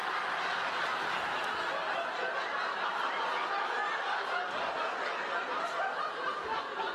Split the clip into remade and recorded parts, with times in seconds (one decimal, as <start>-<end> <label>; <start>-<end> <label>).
0.0-6.9 recorded